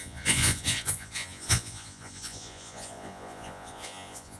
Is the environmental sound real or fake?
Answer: fake